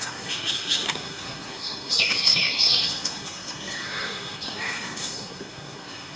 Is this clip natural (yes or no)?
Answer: no